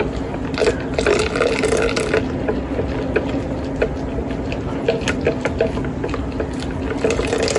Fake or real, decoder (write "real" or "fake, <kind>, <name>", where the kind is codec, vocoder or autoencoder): real